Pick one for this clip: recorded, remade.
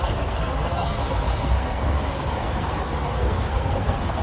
remade